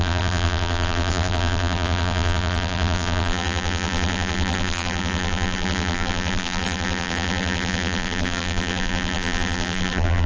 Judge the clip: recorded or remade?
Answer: remade